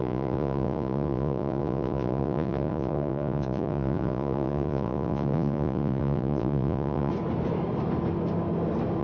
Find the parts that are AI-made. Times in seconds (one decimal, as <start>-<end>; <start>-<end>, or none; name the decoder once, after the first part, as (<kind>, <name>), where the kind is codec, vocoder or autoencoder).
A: 0.0-7.1 (vocoder, Vocos)